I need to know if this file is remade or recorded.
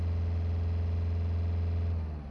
recorded